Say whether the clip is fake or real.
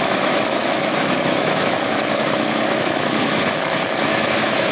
fake